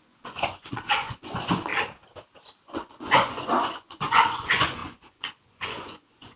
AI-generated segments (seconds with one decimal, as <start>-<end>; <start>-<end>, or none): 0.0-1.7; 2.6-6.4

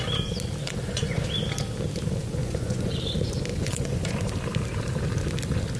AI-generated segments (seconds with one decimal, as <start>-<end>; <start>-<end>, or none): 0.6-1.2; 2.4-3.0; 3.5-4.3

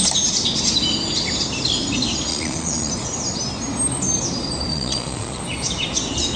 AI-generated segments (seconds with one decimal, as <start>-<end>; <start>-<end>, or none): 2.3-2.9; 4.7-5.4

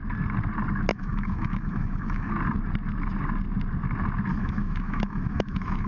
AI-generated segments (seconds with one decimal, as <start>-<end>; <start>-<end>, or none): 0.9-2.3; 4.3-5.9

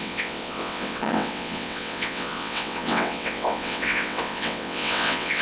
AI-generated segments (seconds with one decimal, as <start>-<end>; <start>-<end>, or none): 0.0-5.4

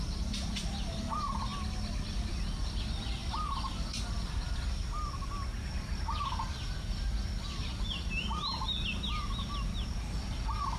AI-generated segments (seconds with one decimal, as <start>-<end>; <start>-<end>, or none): none

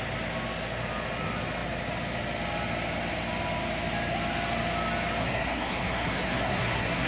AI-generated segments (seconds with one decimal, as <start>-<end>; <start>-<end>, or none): 5.2-7.1